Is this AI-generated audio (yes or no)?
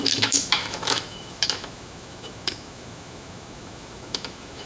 yes